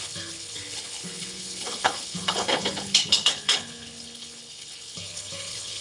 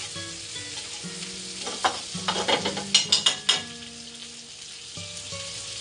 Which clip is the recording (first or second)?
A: second